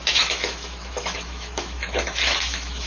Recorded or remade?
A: remade